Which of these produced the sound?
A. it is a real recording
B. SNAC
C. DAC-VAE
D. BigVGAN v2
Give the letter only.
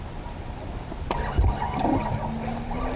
A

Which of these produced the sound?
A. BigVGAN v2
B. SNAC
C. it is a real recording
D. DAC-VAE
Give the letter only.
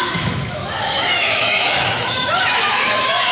D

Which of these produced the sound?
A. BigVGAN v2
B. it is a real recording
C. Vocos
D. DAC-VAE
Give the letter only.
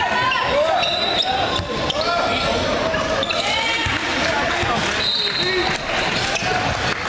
B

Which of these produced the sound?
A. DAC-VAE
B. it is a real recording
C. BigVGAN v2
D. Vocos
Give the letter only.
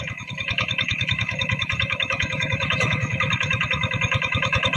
A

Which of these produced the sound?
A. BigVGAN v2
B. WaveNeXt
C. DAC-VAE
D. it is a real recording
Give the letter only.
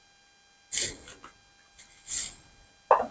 D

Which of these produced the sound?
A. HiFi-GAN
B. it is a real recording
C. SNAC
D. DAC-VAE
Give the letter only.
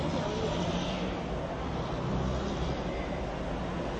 B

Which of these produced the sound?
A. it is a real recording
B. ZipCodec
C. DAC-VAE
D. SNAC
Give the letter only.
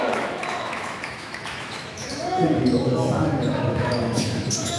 C